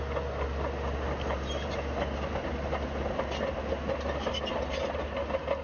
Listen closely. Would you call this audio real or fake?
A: real